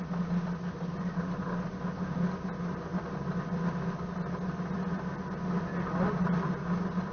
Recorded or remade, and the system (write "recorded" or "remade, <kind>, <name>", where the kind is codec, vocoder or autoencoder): recorded